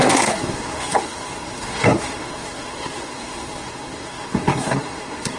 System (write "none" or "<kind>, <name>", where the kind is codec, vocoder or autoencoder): codec, SNAC